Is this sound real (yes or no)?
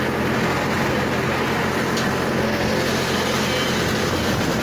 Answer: yes